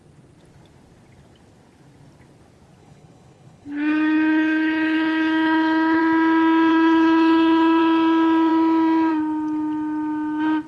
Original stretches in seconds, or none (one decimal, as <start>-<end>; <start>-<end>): 0.0-2.8; 6.0-6.7; 7.8-10.7